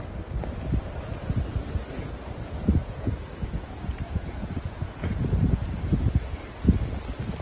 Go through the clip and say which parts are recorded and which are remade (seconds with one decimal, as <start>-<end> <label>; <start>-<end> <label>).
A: 0.0-2.8 recorded; 2.8-5.7 remade; 5.7-7.4 recorded